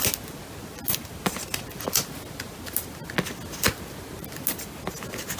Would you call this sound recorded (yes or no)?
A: yes